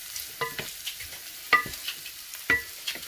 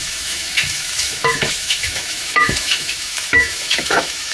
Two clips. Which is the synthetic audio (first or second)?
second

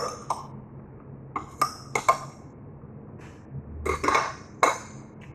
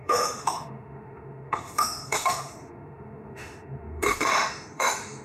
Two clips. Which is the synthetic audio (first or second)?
second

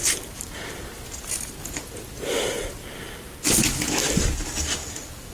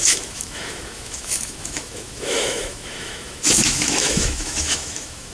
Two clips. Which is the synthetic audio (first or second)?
second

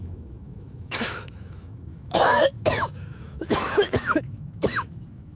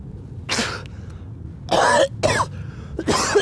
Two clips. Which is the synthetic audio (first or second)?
first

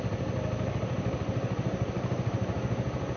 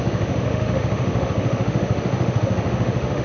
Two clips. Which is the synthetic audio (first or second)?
second